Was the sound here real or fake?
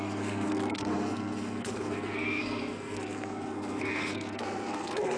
fake